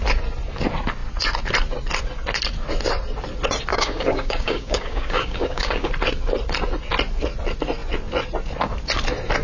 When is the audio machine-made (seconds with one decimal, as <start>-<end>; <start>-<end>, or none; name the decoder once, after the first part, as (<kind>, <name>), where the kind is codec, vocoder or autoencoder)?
3.7-5.9 (codec, DAC)